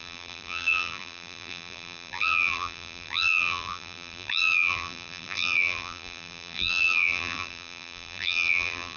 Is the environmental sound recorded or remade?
remade